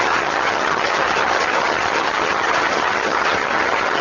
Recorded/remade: remade